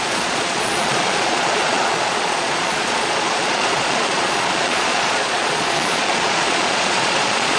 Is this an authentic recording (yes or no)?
no